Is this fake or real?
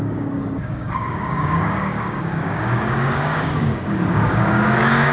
fake